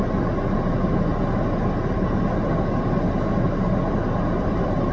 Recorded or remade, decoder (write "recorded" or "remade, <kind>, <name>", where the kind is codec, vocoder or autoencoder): recorded